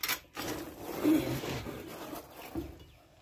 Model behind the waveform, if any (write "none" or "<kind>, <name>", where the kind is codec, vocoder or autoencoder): none